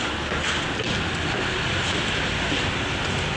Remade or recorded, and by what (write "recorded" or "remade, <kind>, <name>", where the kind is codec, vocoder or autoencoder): recorded